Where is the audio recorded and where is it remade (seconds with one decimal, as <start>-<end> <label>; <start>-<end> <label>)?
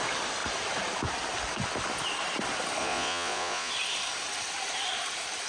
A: 0.0-2.8 recorded; 2.8-3.7 remade; 3.7-5.5 recorded